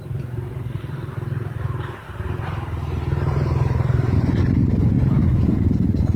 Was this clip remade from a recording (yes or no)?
yes